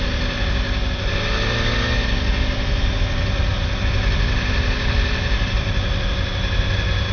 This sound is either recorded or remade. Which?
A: recorded